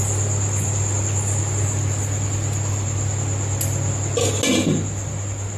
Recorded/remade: recorded